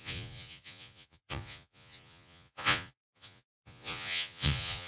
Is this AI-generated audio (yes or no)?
yes